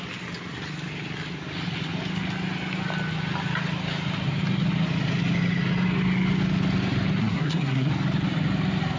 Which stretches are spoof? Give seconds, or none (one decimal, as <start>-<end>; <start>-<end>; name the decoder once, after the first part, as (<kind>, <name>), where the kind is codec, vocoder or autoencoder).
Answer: 7.2-7.9 (codec, SNAC)